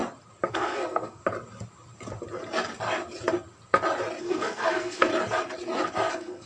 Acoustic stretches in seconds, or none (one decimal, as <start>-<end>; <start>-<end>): 0.0-0.5; 1.2-4.2; 5.1-6.1